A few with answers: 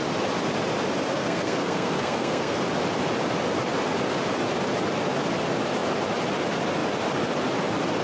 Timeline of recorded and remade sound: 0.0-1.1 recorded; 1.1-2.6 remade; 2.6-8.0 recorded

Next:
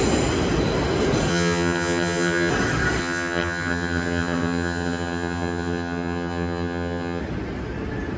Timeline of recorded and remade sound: 0.0-1.3 recorded; 1.3-2.5 remade; 2.5-3.0 recorded; 3.0-7.2 remade; 7.2-8.2 recorded